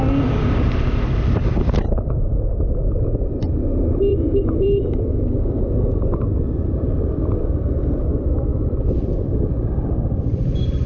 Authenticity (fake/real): fake